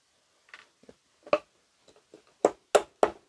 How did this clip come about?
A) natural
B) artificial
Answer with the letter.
A